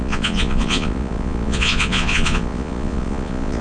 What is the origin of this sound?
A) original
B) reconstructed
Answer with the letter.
B